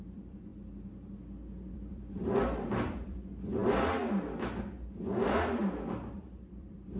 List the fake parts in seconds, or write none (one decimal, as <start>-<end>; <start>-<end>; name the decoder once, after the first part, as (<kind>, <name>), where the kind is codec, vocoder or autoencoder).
0.0-0.5 (vocoder, BigVGAN v2); 1.7-3.6; 4.7-5.6; 6.1-7.0